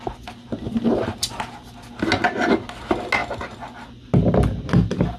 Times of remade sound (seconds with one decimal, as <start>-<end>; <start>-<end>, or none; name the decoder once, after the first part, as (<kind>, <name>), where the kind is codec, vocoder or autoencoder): none